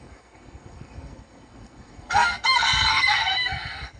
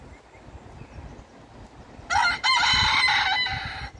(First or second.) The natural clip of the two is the second